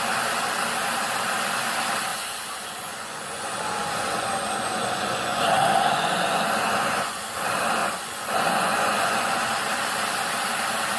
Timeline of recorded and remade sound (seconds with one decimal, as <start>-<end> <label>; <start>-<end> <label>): 0.0-2.1 recorded; 2.1-7.3 remade; 7.3-7.8 recorded; 7.8-9.5 remade; 9.5-11.0 recorded